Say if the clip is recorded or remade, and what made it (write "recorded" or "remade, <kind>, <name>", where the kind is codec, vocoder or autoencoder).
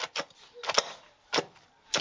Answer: recorded